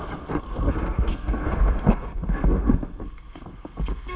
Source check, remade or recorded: remade